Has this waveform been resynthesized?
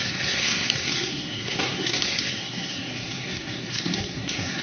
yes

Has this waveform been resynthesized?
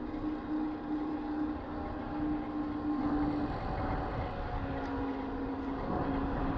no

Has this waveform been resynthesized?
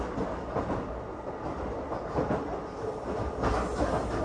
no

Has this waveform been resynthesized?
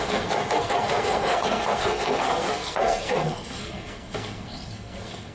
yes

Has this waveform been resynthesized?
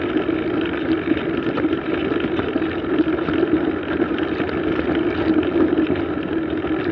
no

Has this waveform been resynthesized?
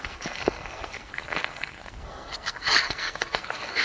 yes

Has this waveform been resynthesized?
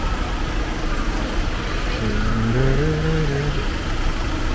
no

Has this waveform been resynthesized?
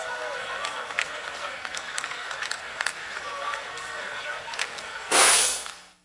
yes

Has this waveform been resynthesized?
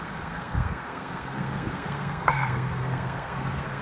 yes